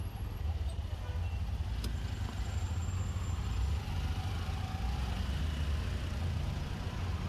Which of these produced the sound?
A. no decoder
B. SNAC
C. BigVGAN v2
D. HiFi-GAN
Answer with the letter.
A